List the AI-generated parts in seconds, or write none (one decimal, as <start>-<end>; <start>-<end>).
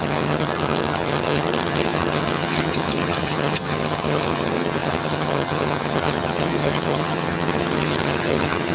0.0-8.7